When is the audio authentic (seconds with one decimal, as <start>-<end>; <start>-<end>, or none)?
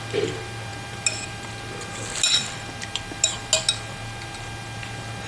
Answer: 0.0-5.3